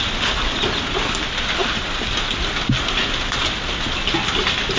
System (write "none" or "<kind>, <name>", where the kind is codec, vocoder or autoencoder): none